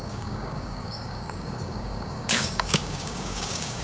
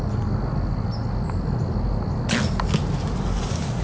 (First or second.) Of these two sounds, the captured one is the second